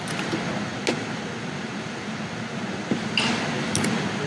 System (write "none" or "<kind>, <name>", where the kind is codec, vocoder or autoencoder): none